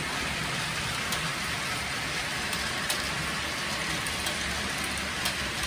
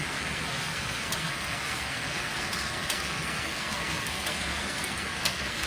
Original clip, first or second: first